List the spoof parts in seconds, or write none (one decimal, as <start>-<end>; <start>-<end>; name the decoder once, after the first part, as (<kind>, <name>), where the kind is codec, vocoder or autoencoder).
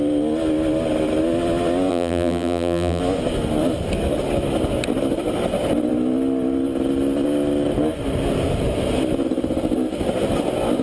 1.9-3.0 (vocoder, BigVGAN v2)